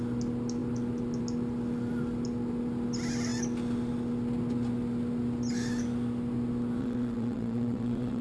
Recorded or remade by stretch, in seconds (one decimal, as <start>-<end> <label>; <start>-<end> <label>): 0.0-6.8 recorded; 6.8-8.2 remade